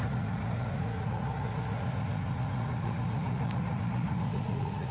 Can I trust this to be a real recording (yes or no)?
no